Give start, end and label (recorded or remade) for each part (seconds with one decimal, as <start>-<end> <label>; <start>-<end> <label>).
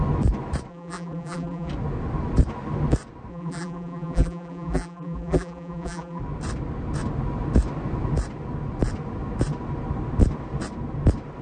0.0-0.7 recorded; 0.7-1.7 remade; 1.7-3.3 recorded; 3.3-6.2 remade; 6.2-11.4 recorded